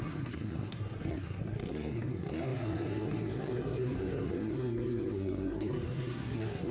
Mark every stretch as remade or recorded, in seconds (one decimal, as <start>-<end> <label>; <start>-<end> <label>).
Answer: 0.0-6.7 remade